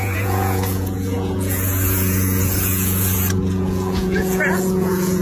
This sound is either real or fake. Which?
fake